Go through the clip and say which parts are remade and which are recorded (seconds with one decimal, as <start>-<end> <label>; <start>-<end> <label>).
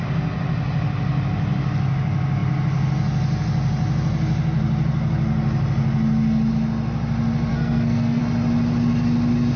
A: 0.0-7.5 recorded; 7.5-8.2 remade; 8.2-9.6 recorded